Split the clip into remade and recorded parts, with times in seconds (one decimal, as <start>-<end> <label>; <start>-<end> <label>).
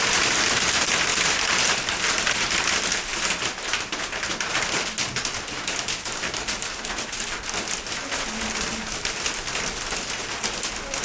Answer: 0.0-11.0 recorded